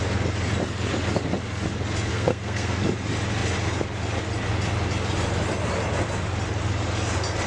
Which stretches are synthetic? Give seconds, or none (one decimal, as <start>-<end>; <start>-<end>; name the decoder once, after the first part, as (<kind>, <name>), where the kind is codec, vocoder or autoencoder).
2.1-2.8 (codec, SNAC)